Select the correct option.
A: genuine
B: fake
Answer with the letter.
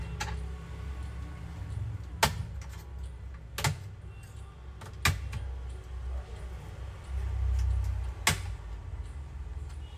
A